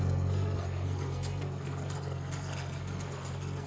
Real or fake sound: fake